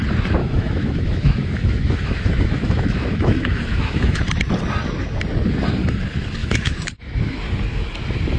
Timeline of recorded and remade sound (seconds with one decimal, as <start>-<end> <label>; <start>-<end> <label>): 0.0-0.4 recorded; 0.4-4.2 remade; 4.2-6.4 recorded; 6.4-7.4 remade; 7.4-8.4 recorded